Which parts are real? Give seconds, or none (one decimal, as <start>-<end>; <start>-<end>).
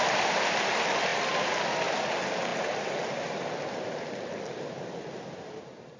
0.0-6.0